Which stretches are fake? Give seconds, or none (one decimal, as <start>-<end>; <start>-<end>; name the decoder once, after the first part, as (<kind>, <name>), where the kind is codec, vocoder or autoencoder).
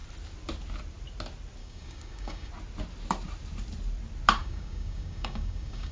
1.6-2.5 (codec, DAC); 4.4-5.9